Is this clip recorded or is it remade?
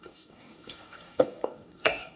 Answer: remade